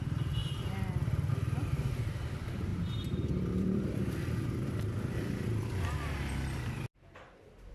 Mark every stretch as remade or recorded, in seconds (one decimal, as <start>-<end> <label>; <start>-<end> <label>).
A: 0.0-2.7 remade; 2.7-3.3 recorded; 3.3-7.7 remade